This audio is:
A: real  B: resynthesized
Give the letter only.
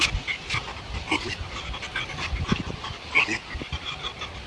A